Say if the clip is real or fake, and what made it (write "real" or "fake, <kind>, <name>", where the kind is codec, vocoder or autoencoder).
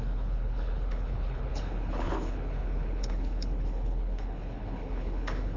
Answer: fake, codec, HILCodec